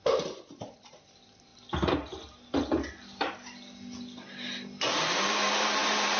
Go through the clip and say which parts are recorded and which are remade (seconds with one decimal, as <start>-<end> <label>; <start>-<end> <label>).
0.0-1.5 remade; 1.5-4.9 recorded; 4.9-6.2 remade